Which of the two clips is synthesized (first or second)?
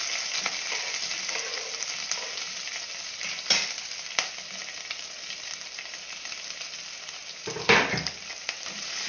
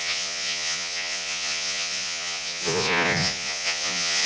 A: second